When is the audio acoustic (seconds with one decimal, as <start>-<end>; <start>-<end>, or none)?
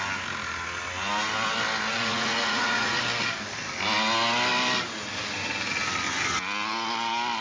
0.0-1.9; 3.0-7.4